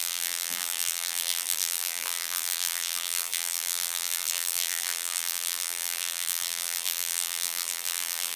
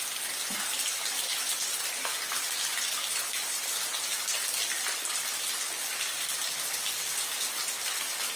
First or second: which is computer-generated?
first